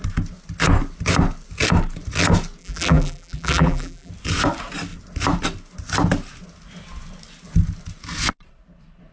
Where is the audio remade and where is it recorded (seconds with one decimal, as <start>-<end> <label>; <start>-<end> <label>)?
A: 0.0-2.6 recorded; 2.6-4.1 remade; 4.1-9.1 recorded